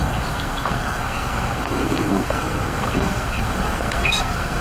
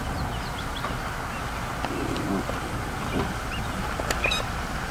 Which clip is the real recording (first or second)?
second